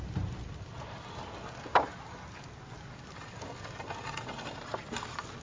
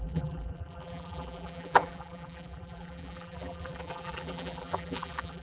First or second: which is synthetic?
second